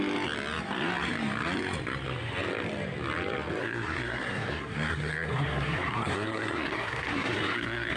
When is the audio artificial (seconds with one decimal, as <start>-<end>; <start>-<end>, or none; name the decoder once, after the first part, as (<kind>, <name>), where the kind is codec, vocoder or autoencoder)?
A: 3.6-8.0 (codec, SNAC)